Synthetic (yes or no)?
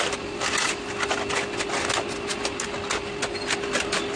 no